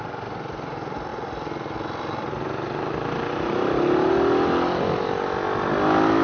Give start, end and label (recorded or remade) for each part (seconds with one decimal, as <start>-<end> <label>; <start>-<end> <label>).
0.0-6.2 recorded